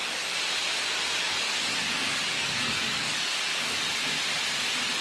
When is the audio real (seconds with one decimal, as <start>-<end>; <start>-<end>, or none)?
0.0-1.1; 3.5-5.0